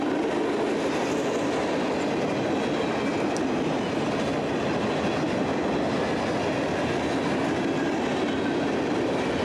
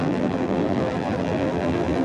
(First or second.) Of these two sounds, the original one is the first